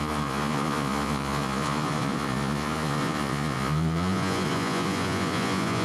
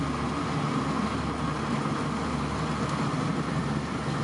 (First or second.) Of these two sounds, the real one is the second